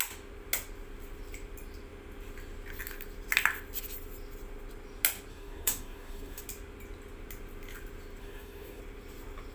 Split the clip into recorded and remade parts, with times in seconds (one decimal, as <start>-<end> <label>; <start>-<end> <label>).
0.0-5.3 recorded; 5.3-6.4 remade; 6.4-8.2 recorded; 8.2-8.8 remade; 8.8-9.5 recorded